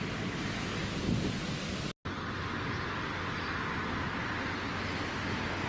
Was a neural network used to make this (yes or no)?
no